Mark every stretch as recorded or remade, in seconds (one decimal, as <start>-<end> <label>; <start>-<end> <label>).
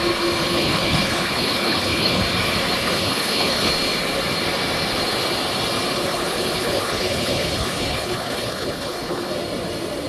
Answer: 0.0-0.4 recorded; 0.4-2.2 remade; 2.2-2.8 recorded; 2.8-3.7 remade; 3.7-5.9 recorded; 5.9-9.3 remade; 9.3-10.1 recorded